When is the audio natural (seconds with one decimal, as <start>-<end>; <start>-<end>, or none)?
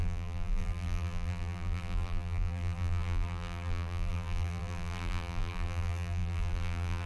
none